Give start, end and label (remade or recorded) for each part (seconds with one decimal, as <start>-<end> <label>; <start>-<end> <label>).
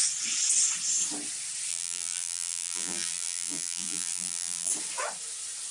0.0-1.7 recorded; 1.7-4.7 remade; 4.7-5.7 recorded